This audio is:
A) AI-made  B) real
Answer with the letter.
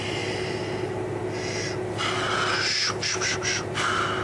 B